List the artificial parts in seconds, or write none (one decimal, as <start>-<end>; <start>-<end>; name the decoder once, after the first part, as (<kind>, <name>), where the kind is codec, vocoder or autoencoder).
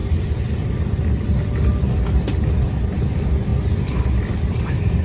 3.0-5.0 (vocoder, BigVGAN v2)